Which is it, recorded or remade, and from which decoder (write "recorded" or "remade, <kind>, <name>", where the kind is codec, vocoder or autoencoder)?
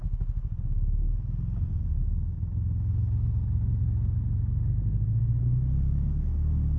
recorded